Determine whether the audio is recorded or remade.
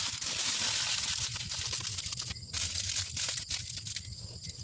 recorded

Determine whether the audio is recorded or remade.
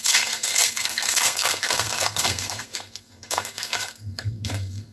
remade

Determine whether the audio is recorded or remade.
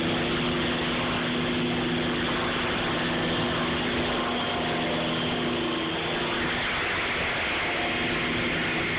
recorded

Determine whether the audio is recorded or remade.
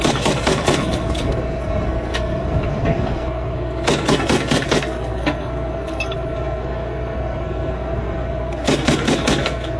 remade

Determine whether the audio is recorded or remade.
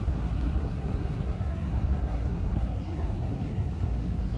remade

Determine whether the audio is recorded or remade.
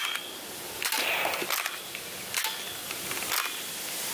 recorded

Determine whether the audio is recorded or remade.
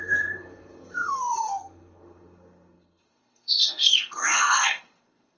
remade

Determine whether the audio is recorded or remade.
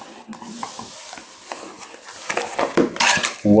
recorded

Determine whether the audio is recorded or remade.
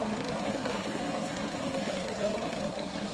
remade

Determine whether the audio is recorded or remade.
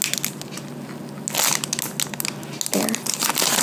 recorded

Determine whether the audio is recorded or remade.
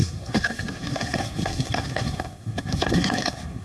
remade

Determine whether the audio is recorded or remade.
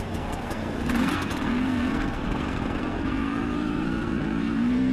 remade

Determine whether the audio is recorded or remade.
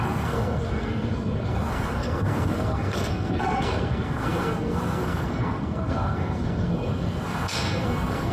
remade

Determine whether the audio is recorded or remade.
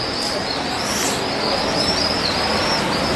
recorded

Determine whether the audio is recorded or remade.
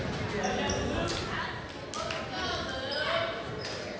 recorded